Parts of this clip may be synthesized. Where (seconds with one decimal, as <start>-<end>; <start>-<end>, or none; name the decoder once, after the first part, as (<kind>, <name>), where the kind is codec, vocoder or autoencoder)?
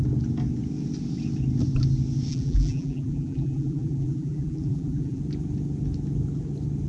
2.3-5.2 (vocoder, BigVGAN v2)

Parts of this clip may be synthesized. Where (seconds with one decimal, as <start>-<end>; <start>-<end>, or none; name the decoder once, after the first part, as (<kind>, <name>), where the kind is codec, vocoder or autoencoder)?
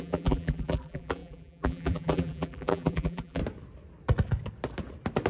0.0-3.4 (vocoder, BigVGAN v2)